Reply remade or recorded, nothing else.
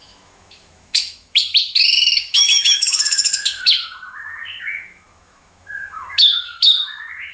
remade